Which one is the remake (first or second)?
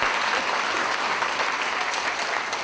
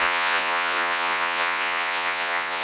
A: second